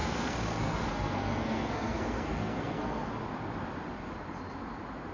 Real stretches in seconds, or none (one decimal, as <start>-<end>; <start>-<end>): 3.1-5.1